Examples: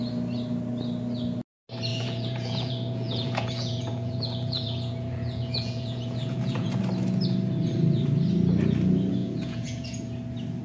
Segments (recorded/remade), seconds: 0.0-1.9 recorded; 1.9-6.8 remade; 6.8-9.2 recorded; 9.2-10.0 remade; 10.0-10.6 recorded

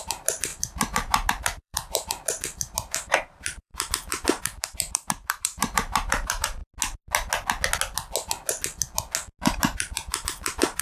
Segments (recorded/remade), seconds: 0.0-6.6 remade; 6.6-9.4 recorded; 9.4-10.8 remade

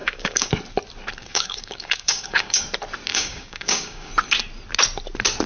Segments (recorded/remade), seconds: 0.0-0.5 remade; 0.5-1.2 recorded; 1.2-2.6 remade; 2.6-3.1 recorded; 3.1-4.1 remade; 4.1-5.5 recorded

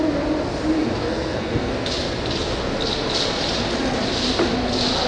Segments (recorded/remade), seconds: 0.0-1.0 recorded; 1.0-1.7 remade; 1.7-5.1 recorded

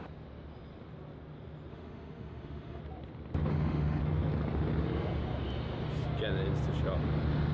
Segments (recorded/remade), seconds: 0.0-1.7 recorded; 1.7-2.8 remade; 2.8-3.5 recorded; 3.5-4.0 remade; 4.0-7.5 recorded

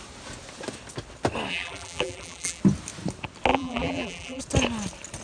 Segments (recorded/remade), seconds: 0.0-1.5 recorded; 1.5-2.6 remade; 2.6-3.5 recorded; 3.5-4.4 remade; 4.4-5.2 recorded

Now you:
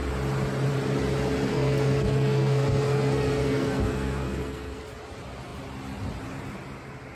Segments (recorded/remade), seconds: 0.0-1.5 recorded; 1.5-4.8 remade; 4.8-7.1 recorded

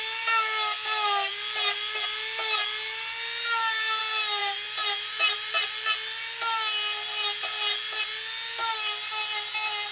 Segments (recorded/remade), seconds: 0.0-9.9 recorded